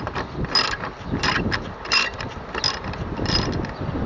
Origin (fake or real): real